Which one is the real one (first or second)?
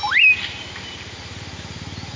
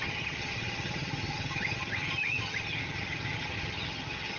first